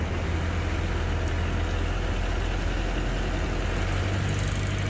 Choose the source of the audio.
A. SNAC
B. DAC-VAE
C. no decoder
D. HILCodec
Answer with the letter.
C